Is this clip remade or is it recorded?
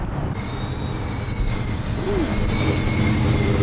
recorded